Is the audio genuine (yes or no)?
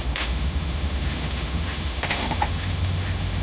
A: no